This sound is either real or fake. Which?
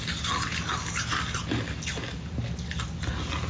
real